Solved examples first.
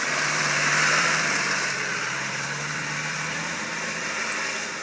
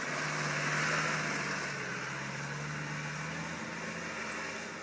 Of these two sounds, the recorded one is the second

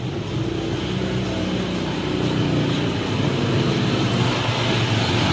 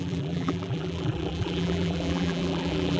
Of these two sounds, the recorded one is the first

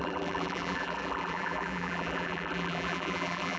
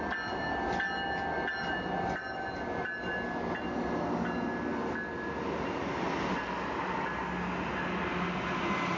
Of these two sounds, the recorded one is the second